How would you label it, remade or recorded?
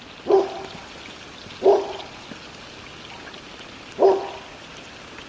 recorded